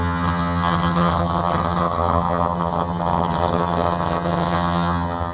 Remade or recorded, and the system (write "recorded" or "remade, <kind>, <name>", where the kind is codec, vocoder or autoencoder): remade, vocoder, HiFi-GAN